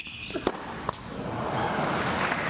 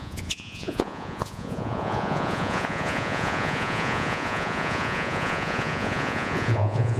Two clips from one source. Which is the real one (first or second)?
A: first